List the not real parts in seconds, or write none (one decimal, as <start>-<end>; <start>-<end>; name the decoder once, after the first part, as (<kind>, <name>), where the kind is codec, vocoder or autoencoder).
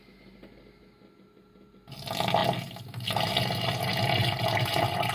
none